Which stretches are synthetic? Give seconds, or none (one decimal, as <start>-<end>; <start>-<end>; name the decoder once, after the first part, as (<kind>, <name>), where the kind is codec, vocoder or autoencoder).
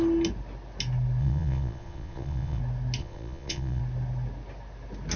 1.2-2.6 (vocoder, Vocos); 3.0-3.8